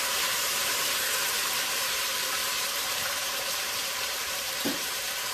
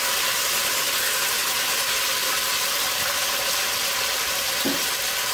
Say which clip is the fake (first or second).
first